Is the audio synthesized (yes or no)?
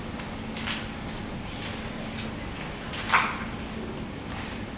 no